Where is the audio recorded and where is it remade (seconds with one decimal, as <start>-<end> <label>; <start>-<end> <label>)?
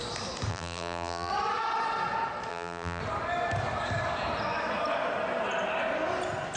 0.0-0.5 recorded; 0.5-1.3 remade; 1.3-2.5 recorded; 2.5-3.0 remade; 3.0-6.6 recorded